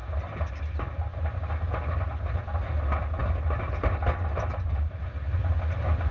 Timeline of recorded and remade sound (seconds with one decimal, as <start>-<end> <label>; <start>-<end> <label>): 0.0-6.1 recorded